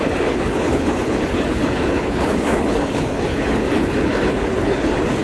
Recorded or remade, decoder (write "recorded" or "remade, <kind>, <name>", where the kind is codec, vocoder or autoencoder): remade, codec, HILCodec